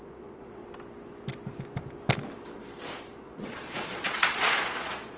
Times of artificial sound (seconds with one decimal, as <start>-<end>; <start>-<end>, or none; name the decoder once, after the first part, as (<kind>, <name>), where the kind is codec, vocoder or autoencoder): 0.0-0.6 (vocoder, Vocos); 3.2-5.2